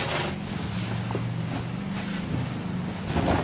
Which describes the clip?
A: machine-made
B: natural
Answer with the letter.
B